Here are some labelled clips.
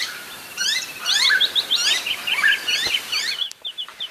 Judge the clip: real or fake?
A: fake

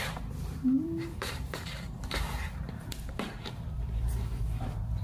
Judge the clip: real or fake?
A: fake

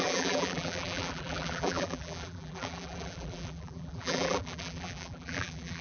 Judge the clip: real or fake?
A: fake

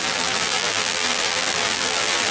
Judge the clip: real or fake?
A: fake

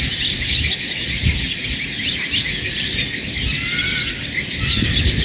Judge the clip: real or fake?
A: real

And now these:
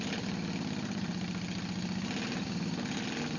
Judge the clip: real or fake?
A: real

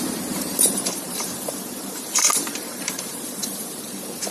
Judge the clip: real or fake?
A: fake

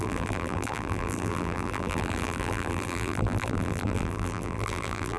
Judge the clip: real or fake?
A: fake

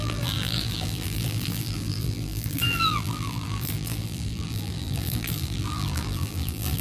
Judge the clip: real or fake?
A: fake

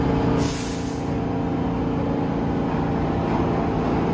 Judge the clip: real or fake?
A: real